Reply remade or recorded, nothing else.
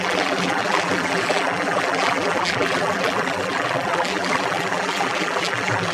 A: remade